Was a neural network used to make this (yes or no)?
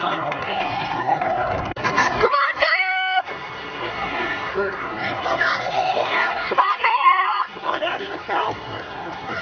yes